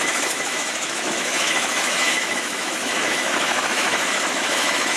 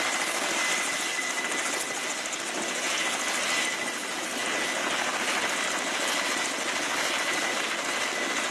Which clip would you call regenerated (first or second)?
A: first